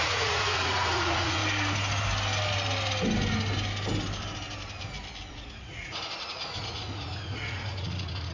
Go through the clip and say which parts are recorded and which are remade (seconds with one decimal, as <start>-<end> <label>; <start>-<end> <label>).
0.0-1.4 remade; 1.4-5.3 recorded; 5.3-8.3 remade